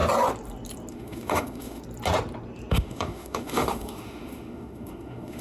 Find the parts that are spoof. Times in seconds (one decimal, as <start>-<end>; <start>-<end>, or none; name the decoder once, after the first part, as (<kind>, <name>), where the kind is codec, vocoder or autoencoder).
0.9-1.8 (autoencoder, DAC-VAE); 2.7-5.4